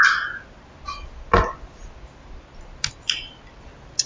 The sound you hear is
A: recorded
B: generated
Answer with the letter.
A